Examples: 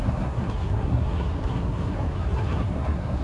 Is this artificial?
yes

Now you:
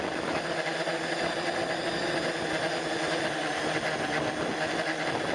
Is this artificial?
no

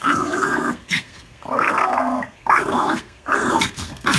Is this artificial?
yes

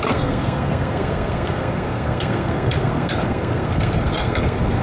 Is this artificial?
yes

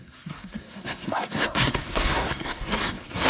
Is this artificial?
yes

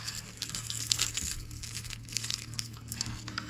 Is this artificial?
yes